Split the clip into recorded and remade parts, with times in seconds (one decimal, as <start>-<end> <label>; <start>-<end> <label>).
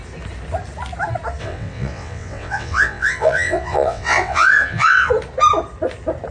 0.0-1.4 recorded; 1.4-5.1 remade; 5.1-6.3 recorded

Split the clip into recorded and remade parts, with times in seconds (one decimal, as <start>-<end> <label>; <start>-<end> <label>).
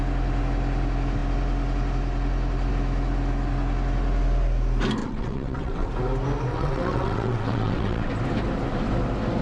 0.0-5.0 recorded; 5.0-5.9 remade; 5.9-6.5 recorded; 6.5-8.1 remade; 8.1-9.4 recorded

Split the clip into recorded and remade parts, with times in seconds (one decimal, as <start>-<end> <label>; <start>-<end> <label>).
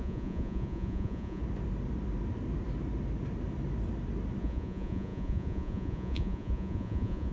0.0-1.4 remade; 1.4-4.4 recorded; 4.4-7.3 remade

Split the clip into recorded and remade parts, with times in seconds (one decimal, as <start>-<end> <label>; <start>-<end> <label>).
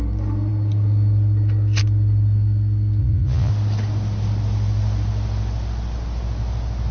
0.0-3.0 recorded; 3.0-3.5 remade; 3.5-6.9 recorded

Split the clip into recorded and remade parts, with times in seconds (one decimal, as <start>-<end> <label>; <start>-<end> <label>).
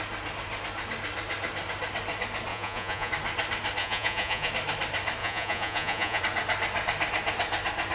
0.0-2.5 recorded; 2.5-3.1 remade; 3.1-3.8 recorded; 3.8-4.5 remade; 4.5-5.2 recorded; 5.2-6.2 remade; 6.2-7.9 recorded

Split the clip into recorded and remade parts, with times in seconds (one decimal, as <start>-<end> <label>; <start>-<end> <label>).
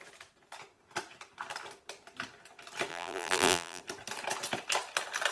0.0-2.9 recorded; 2.9-3.8 remade; 3.8-5.3 recorded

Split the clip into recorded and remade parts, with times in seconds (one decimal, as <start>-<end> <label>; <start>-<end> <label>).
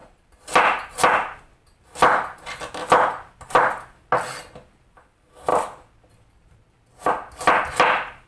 0.0-8.3 recorded